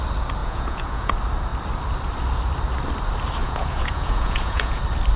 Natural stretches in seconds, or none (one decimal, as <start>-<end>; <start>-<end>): 0.0-0.4; 1.1-3.4; 4.8-5.2